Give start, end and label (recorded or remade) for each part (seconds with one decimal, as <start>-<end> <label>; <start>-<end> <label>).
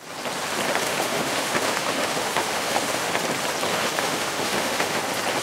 0.0-0.8 recorded; 0.8-3.1 remade; 3.1-3.7 recorded; 3.7-5.0 remade; 5.0-5.4 recorded